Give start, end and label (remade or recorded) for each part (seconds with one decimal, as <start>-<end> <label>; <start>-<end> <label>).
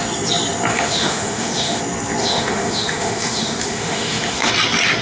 0.0-0.7 recorded; 0.7-1.8 remade; 1.8-2.2 recorded; 2.2-4.5 remade; 4.5-5.0 recorded